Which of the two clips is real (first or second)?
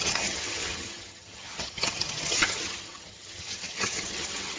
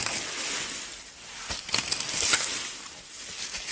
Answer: second